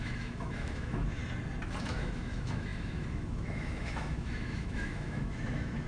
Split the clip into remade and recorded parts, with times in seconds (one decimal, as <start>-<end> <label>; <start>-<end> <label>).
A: 0.0-1.2 remade; 1.2-1.8 recorded; 1.8-5.9 remade